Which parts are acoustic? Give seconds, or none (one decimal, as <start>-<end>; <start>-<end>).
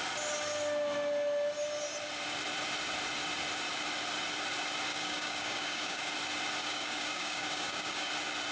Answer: 0.0-4.9; 6.1-6.6; 8.1-8.5